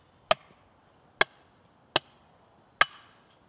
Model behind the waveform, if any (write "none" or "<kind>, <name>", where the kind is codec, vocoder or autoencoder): none